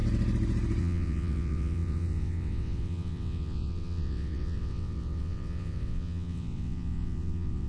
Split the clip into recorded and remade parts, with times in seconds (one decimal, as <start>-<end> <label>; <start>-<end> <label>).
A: 0.0-0.8 recorded; 0.8-7.7 remade